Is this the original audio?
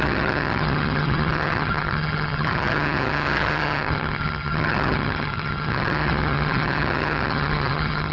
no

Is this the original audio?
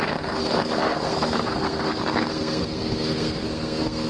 no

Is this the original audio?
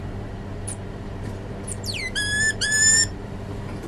no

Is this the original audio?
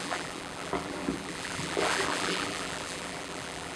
no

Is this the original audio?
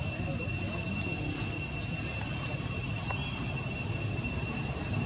yes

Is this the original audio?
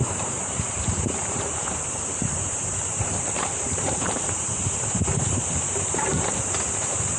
no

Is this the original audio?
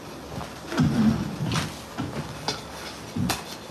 yes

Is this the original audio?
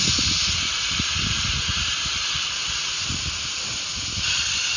yes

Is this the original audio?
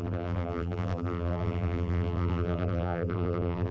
no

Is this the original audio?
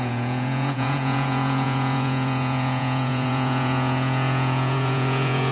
no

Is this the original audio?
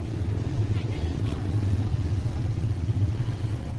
no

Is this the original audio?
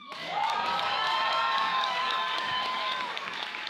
no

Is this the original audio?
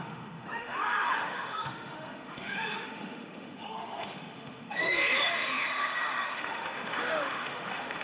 no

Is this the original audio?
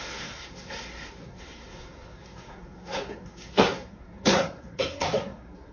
no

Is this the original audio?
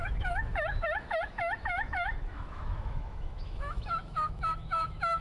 no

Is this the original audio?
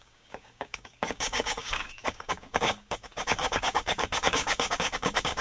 no